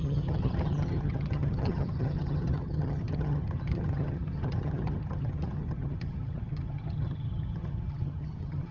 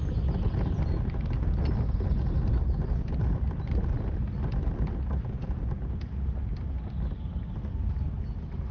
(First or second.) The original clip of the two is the second